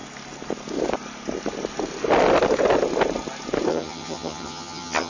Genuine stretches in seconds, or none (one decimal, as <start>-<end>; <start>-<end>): 0.0-3.7